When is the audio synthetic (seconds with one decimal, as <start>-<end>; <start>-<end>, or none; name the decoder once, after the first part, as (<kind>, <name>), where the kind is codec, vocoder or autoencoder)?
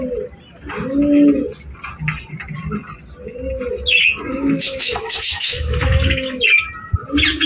4.3-6.4 (autoencoder, DAC-VAE)